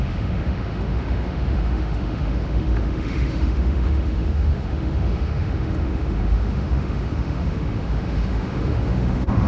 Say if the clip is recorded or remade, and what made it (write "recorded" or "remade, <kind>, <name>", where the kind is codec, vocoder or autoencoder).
remade, autoencoder, DAC-VAE